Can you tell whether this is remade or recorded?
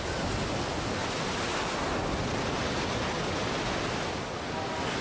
recorded